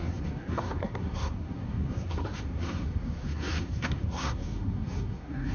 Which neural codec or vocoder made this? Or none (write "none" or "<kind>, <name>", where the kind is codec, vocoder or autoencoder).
codec, SNAC